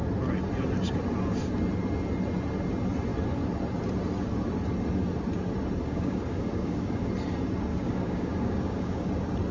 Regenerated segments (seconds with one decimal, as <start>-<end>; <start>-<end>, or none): 5.9-7.1; 7.7-9.1